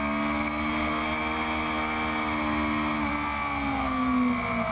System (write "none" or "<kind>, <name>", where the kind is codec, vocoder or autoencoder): none